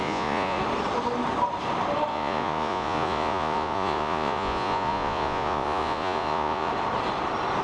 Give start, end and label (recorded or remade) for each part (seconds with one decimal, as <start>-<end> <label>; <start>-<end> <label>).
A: 0.0-0.6 remade; 0.6-2.1 recorded; 2.1-6.7 remade; 6.7-7.6 recorded